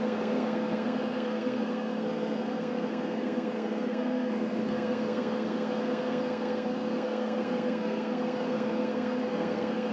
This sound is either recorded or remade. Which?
remade